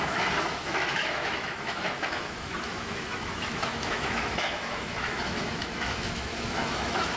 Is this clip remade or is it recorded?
remade